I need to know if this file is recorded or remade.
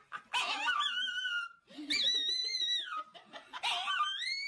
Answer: recorded